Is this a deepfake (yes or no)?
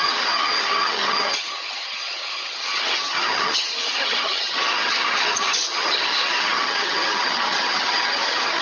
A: yes